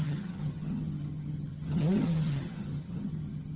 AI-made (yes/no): yes